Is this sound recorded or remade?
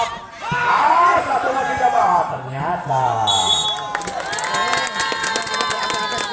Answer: recorded